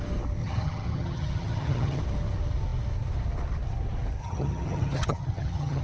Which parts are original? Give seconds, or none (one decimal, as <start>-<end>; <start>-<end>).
0.0-0.4; 2.0-4.2